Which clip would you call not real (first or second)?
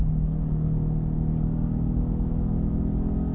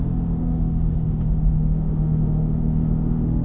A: second